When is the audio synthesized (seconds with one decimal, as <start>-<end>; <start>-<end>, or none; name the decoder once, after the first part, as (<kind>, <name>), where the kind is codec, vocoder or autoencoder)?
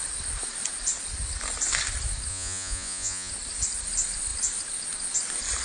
2.3-3.3 (vocoder, Vocos)